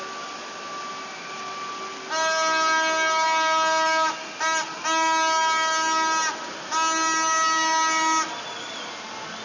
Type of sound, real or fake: real